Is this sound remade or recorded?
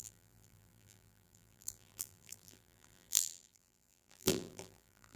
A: remade